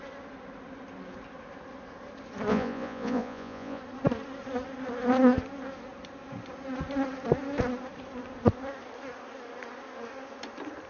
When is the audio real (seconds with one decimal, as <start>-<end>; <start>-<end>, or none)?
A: 0.0-2.5; 3.8-10.9